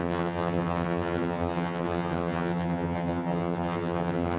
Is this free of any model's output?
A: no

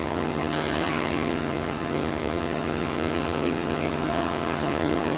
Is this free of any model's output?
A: no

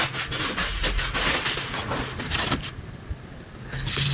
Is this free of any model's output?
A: yes